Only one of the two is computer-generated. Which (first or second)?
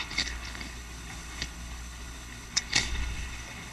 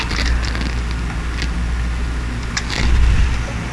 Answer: first